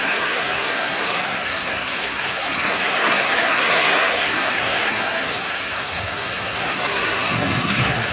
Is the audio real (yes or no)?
no